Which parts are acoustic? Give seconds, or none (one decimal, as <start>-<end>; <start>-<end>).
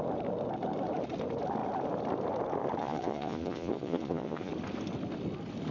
0.0-2.8; 4.5-5.7